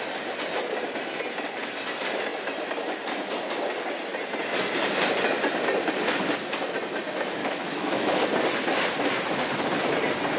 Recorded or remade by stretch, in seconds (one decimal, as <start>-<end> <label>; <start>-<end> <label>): 0.0-7.4 recorded; 7.4-8.2 remade; 8.2-10.4 recorded